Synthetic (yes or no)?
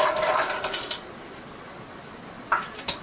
no